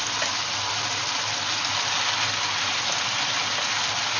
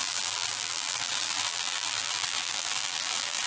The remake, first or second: second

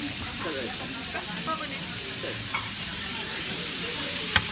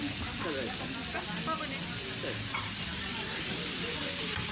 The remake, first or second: first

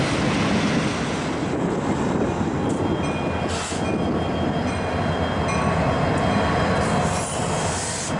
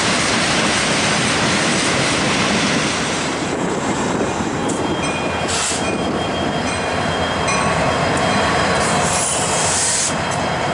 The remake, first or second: second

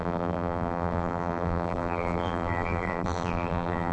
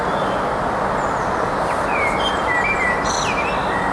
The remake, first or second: first